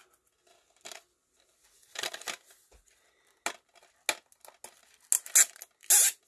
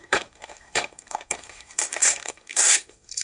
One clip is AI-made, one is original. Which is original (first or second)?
first